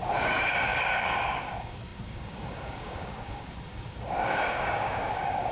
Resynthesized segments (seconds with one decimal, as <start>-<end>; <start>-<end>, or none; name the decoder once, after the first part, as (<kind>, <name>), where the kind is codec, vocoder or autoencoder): 0.0-5.5 (codec, DAC)